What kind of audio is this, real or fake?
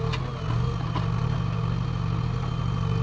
real